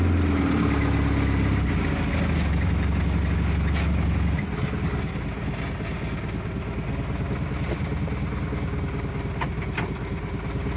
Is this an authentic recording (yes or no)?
yes